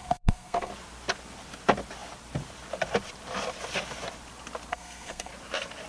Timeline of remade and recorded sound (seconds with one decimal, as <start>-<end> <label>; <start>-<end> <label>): 0.0-0.7 remade; 0.7-4.7 recorded; 4.7-5.3 remade; 5.3-5.9 recorded